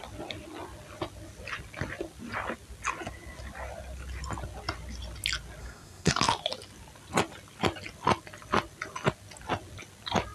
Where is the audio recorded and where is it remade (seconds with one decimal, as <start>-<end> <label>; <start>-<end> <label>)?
0.0-5.6 recorded; 5.6-6.1 remade; 6.1-10.3 recorded